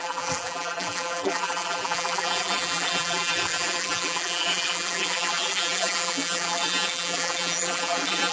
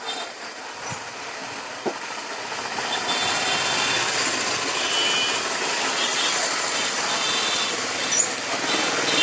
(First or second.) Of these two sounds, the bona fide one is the second